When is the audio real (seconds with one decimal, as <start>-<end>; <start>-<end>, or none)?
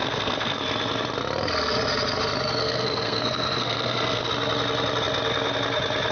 0.6-2.6; 4.3-6.1